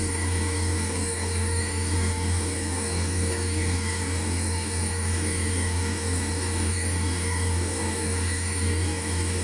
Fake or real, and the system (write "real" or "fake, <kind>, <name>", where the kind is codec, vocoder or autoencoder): fake, codec, DAC